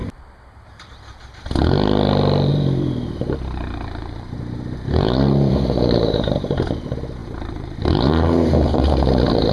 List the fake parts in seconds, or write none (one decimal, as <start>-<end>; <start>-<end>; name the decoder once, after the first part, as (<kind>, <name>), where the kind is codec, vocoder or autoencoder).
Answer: 0.0-0.9 (vocoder, BigVGAN v2); 2.5-6.7; 7.2-9.5